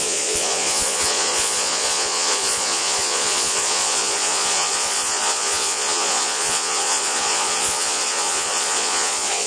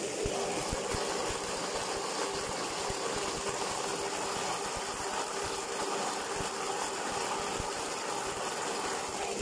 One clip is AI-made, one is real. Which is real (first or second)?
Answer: second